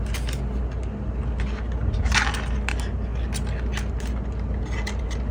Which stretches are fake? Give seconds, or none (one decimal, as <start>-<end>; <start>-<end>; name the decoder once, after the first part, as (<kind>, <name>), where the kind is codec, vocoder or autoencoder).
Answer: none